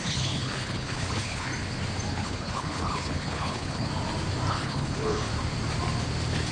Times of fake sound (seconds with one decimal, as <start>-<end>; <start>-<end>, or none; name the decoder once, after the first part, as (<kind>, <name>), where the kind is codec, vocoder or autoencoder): 0.0-1.5 (codec, HILCodec); 2.1-3.9; 4.5-5.3